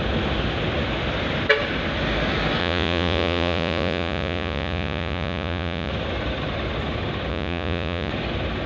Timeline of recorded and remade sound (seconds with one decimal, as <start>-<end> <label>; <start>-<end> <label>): 0.0-2.6 recorded; 2.6-5.9 remade; 5.9-7.3 recorded; 7.3-8.1 remade; 8.1-8.7 recorded